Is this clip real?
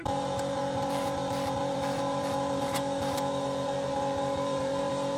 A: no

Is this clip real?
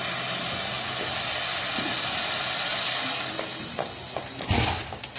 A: yes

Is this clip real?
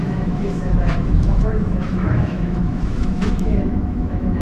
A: no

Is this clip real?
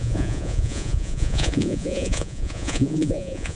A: no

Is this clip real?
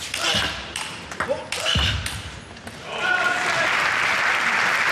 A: no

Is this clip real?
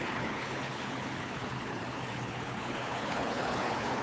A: no